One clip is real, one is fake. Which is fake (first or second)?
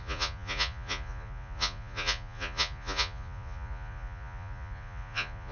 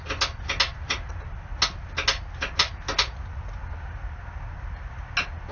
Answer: first